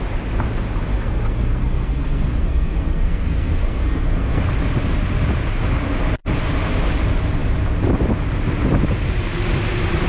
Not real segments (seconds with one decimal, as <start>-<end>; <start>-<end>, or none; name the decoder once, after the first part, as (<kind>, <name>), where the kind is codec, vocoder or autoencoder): 0.9-4.4 (codec, SNAC)